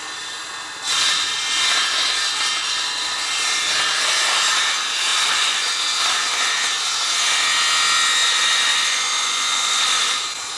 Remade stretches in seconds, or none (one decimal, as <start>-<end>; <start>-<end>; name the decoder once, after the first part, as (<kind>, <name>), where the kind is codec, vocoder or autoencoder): 5.1-5.7 (vocoder, Vocos); 8.7-9.8